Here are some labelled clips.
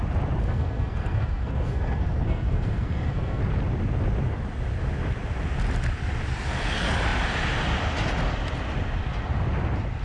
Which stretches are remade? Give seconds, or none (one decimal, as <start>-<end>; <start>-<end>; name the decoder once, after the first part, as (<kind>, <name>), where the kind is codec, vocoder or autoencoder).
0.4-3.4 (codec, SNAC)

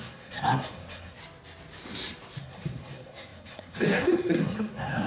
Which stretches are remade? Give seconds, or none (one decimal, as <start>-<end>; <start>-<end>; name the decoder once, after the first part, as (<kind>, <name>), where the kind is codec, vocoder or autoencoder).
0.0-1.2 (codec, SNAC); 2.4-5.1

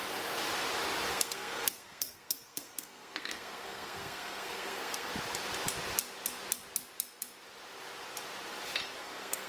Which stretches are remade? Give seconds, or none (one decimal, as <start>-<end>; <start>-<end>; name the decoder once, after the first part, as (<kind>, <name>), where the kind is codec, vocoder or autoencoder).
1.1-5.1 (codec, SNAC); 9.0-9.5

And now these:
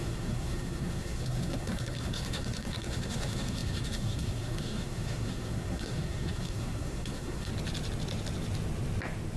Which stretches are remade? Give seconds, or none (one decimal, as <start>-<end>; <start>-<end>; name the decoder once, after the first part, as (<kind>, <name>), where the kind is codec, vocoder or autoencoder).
0.0-7.5 (codec, SNAC)

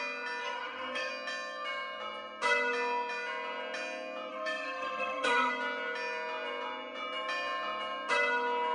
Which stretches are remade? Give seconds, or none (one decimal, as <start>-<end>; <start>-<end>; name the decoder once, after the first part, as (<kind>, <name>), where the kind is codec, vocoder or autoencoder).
0.4-1.1 (codec, SNAC); 4.3-5.5

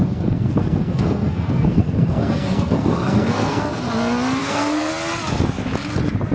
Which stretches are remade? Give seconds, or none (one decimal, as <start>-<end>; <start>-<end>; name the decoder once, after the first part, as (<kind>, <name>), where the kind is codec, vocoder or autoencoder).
0.0-3.8 (codec, SNAC); 4.4-4.9

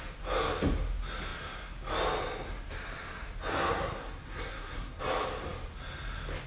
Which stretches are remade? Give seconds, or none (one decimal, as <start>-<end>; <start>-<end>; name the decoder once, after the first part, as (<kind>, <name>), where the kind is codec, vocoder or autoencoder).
3.5-5.0 (codec, SNAC)